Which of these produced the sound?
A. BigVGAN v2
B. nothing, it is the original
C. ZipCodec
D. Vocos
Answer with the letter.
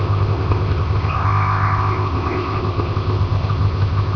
C